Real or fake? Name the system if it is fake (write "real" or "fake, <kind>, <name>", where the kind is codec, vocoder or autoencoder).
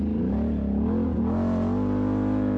real